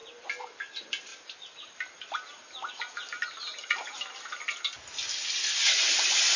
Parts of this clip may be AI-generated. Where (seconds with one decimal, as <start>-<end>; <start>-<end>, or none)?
none